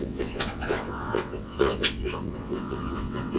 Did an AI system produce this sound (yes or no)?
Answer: yes